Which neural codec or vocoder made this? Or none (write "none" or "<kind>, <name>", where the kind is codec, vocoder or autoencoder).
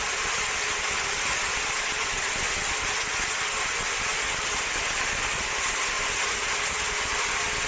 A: none